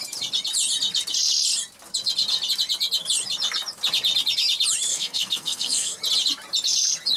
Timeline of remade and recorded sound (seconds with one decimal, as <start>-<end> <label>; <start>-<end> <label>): 0.0-4.9 recorded; 4.9-6.0 remade; 6.0-7.2 recorded